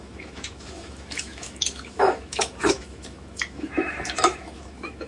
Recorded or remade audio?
remade